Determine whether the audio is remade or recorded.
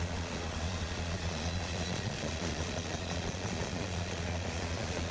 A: remade